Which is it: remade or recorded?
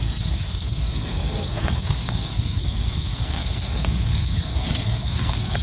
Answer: remade